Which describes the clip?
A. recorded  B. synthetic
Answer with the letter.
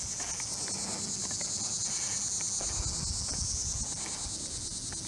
A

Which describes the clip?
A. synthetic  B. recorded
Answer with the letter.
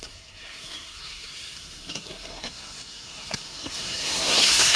A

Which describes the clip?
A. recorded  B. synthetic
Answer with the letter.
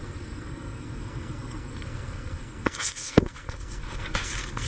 B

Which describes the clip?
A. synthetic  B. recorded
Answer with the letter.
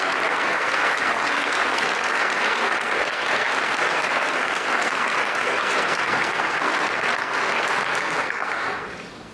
A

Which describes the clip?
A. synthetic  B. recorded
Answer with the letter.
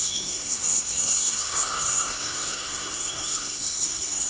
A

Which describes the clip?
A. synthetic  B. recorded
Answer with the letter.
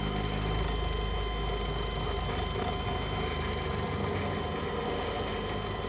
B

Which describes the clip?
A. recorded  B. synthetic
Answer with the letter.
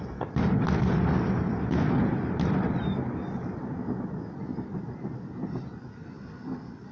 A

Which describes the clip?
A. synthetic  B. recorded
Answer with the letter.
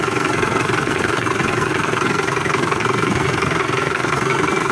A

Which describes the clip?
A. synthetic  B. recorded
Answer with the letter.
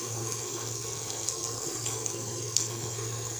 A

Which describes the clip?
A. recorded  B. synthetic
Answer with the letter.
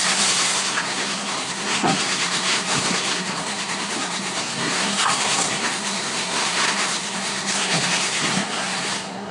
B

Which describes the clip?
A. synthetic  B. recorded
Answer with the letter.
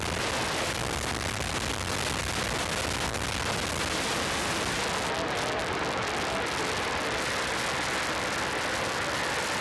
B